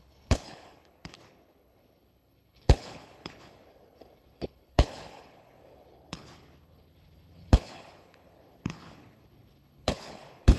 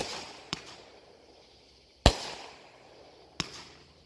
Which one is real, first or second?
second